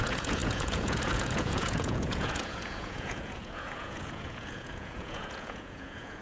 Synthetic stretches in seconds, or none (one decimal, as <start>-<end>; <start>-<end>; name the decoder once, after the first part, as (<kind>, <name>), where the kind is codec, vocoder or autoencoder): 0.0-6.2 (vocoder, Vocos)

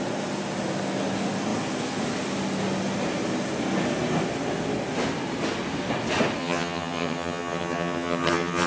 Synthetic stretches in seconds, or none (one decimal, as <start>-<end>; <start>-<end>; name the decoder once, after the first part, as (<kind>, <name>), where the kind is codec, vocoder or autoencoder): 6.4-8.7 (vocoder, HiFi-GAN)

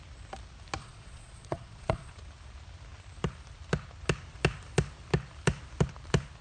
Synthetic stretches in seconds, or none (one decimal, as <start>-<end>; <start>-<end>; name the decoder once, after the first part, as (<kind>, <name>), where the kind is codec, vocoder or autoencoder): 0.8-2.1 (vocoder, Vocos)

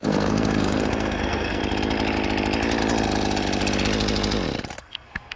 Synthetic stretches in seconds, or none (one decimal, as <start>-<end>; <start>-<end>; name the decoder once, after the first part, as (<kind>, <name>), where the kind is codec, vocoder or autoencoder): 0.0-1.6 (codec, SNAC); 4.8-5.4

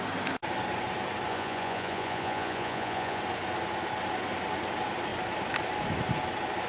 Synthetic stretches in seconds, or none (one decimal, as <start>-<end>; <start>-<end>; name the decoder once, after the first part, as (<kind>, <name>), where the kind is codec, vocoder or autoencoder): 1.3-3.2 (vocoder, Vocos)

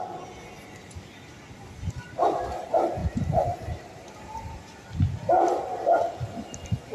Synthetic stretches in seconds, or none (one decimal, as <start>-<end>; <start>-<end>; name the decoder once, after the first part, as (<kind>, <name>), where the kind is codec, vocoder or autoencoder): 3.0-4.6 (vocoder, BigVGAN v2)

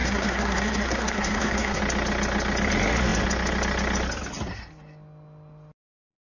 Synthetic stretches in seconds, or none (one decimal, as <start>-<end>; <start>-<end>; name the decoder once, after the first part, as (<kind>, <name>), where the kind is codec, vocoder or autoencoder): 0.0-1.8 (codec, SNAC)

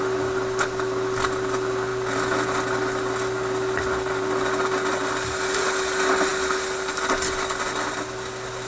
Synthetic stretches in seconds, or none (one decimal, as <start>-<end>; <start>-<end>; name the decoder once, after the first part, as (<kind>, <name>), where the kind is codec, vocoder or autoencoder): none